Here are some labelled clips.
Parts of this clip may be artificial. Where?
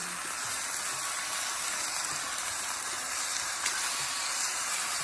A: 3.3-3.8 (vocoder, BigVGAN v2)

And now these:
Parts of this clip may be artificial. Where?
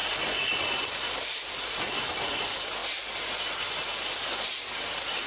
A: none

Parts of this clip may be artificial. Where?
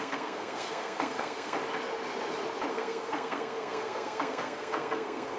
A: 0.0-1.6 (codec, SNAC); 2.7-5.4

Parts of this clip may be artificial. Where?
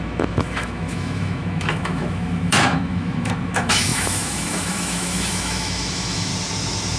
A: 0.0-6.3 (autoencoder, DAC-VAE)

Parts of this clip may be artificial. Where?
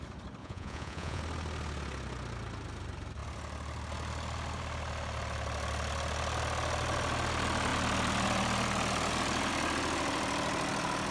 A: 0.4-1.2 (vocoder, Vocos)